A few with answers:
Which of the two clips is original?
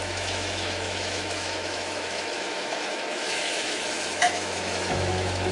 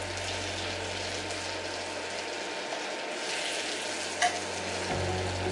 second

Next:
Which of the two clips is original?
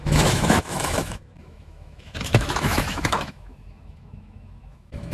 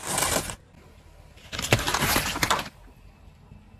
second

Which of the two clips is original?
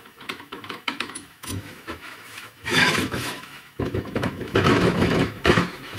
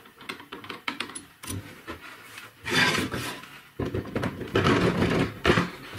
second